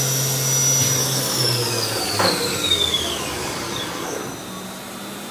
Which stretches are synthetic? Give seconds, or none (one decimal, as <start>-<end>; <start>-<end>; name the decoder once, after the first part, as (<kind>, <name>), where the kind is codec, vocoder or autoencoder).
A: 1.0-4.2 (codec, DAC)